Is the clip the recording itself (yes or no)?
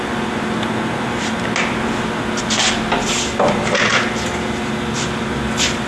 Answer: yes